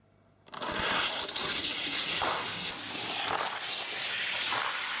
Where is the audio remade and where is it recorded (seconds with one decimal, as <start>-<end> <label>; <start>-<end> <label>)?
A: 0.0-1.4 recorded; 1.4-2.2 remade; 2.2-5.0 recorded